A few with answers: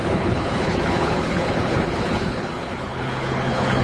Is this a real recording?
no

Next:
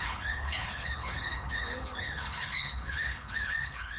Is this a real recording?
no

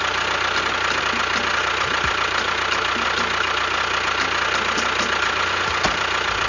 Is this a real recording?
yes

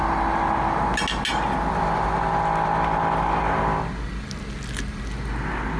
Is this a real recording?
yes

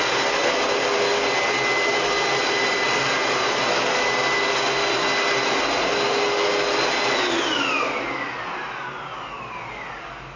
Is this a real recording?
yes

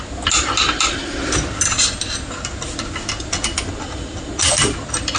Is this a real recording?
yes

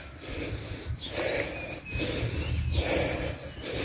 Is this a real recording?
yes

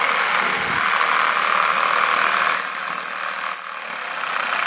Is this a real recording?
yes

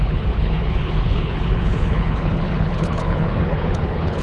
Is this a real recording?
no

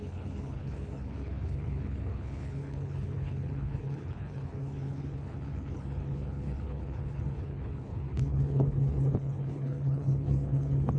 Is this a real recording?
no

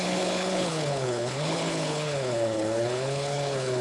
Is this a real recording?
no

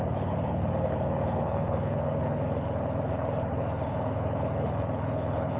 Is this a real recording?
no